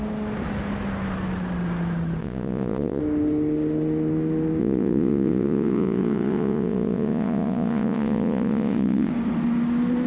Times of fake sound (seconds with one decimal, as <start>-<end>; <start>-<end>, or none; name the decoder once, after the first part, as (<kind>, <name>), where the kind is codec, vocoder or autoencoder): 2.2-3.0 (vocoder, Vocos); 4.6-9.1